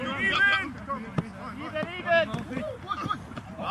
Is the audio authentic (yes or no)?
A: yes